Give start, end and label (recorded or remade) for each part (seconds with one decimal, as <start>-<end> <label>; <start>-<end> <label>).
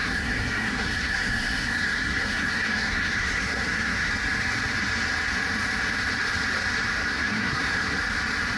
0.0-4.1 remade; 4.1-7.1 recorded; 7.1-8.0 remade; 8.0-8.6 recorded